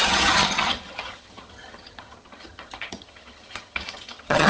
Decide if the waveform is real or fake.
fake